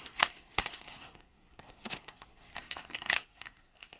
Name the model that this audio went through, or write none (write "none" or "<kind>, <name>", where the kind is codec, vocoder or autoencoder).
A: codec, SNAC